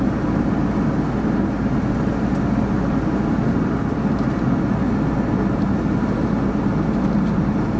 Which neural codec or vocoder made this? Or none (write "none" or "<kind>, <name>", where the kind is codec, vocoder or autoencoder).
none